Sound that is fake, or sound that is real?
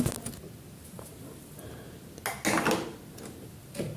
real